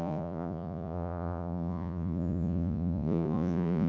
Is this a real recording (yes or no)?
no